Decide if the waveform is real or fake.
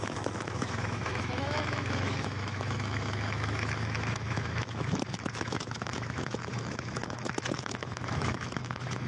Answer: fake